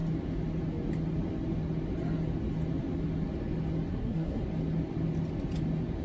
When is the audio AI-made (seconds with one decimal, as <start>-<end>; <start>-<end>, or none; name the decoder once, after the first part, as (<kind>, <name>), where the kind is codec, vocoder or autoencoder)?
3.9-4.4 (codec, SNAC)